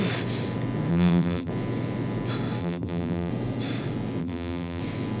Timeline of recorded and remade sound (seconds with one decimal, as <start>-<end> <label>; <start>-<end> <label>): 0.0-0.9 recorded; 0.9-1.5 remade; 1.5-2.6 recorded; 2.6-3.3 remade; 3.3-4.2 recorded; 4.2-4.8 remade; 4.8-5.2 recorded